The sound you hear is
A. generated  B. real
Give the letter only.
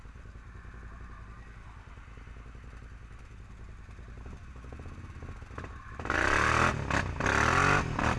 B